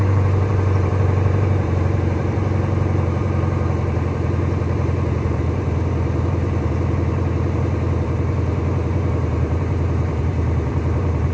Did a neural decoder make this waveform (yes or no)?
yes